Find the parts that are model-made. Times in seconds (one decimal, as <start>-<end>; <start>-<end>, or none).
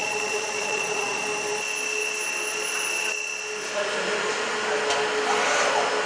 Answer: 0.0-1.2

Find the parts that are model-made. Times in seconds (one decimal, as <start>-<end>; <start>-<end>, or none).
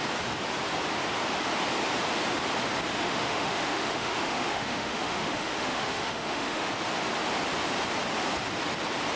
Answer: 2.9-6.7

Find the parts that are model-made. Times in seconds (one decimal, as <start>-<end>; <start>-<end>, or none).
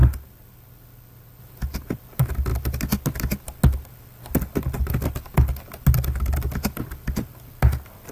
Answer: none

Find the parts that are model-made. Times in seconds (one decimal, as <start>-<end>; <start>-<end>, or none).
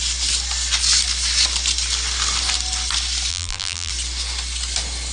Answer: 3.3-3.9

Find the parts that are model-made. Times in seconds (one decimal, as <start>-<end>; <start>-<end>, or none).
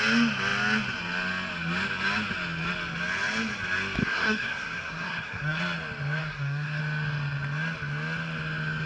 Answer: 4.0-5.6; 6.2-6.8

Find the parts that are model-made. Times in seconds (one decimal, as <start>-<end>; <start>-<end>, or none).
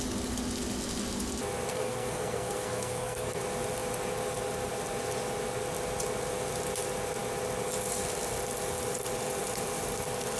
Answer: 1.7-3.4